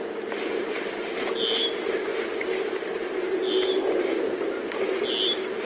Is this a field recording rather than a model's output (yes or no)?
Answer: yes